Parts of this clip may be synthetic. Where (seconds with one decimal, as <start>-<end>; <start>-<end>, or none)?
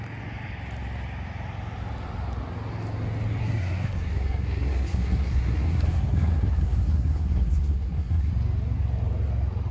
3.4-8.3